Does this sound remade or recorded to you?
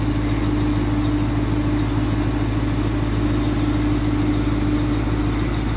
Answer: recorded